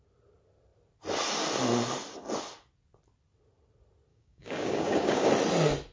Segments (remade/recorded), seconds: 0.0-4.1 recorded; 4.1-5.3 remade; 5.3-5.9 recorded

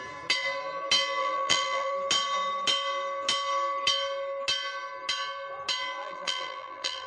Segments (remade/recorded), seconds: 0.0-1.2 recorded; 1.2-1.9 remade; 1.9-6.0 recorded; 6.0-7.1 remade

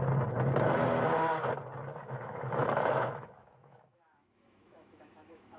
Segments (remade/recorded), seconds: 0.0-1.9 recorded; 1.9-5.6 remade

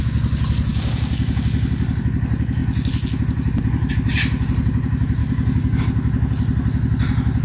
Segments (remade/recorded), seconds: 0.0-0.7 recorded; 0.7-2.0 remade; 2.0-5.2 recorded; 5.2-5.8 remade; 5.8-7.4 recorded

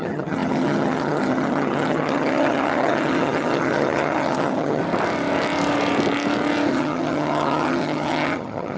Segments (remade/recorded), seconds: 0.0-4.8 remade; 4.8-6.7 recorded; 6.7-8.8 remade

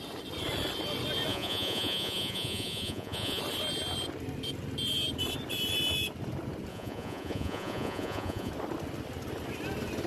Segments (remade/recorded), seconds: 0.0-1.3 recorded; 1.3-3.4 remade; 3.4-6.7 recorded; 6.7-8.5 remade; 8.5-10.1 recorded

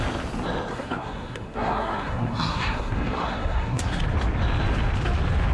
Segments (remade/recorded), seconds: 0.0-0.7 recorded; 0.7-4.0 remade; 4.0-5.5 recorded

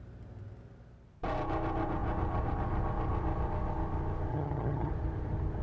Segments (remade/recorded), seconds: 0.0-4.3 recorded; 4.3-4.9 remade; 4.9-5.6 recorded